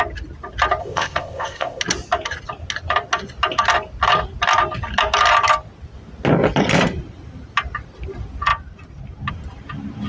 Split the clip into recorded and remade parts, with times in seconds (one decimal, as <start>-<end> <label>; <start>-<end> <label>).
0.0-0.8 recorded; 0.8-1.8 remade; 1.8-10.1 recorded